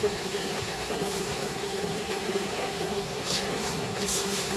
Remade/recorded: remade